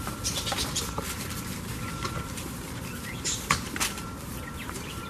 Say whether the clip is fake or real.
fake